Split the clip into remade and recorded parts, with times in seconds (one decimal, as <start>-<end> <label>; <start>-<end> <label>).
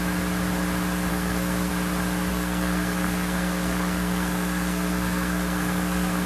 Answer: 0.0-1.1 recorded; 1.1-1.7 remade; 1.7-2.3 recorded; 2.3-6.3 remade